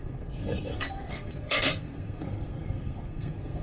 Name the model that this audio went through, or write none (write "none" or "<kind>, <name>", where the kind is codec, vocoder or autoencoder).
codec, SNAC